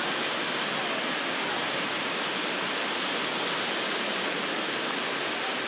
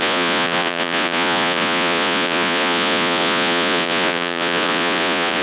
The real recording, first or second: first